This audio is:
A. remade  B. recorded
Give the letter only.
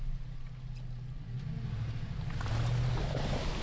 B